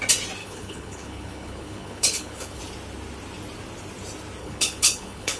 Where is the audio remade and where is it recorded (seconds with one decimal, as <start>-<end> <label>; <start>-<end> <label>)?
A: 0.0-0.4 recorded; 0.4-2.6 remade; 2.6-4.4 recorded; 4.4-5.4 remade